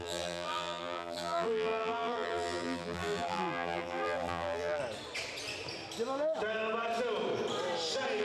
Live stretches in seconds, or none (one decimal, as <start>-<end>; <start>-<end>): 4.8-8.2

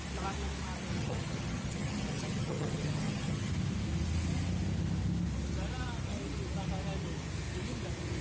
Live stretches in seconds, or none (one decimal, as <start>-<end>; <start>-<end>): 0.0-0.9; 3.5-8.2

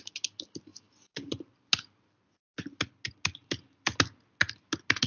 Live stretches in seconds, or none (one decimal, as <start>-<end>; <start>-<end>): 0.0-5.1

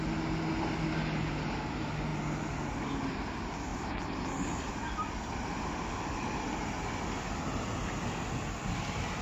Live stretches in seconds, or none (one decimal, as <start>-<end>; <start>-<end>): 0.0-9.2

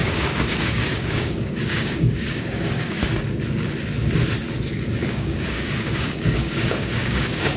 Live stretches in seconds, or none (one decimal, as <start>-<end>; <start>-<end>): 3.0-5.1

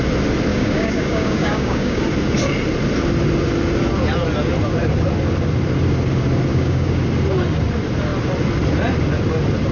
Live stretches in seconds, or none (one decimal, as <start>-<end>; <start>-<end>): 0.0-0.5; 2.0-6.5; 7.0-9.7